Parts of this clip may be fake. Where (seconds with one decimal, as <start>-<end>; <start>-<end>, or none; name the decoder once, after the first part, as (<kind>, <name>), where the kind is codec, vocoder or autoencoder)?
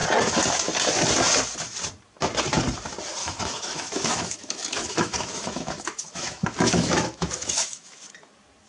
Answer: 3.2-8.1 (autoencoder, DAC-VAE)